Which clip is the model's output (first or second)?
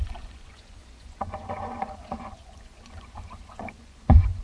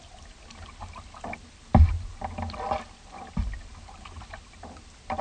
first